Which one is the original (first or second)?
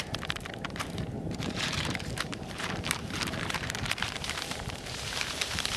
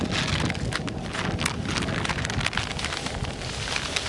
second